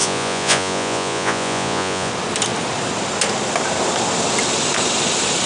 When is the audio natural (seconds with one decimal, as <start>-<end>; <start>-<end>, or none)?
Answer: 2.1-5.5